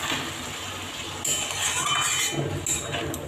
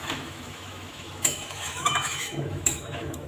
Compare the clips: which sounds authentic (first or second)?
first